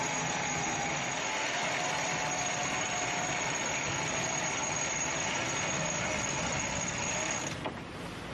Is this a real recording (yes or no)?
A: yes